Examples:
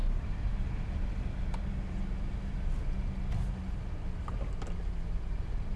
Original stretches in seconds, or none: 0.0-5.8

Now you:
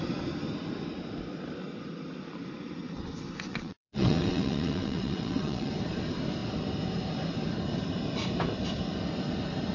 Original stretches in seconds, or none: 0.0-3.5; 5.7-9.7

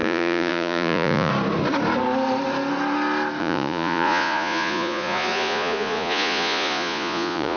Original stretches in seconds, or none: 1.3-3.4

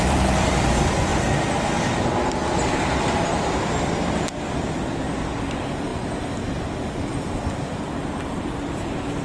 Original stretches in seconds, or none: 1.1-2.3

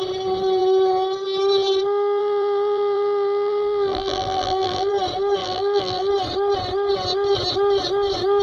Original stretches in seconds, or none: 0.0-2.2; 4.9-5.4; 6.1-8.4